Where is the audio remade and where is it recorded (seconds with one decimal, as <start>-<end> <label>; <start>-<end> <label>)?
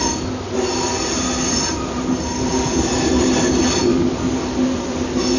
0.0-5.4 recorded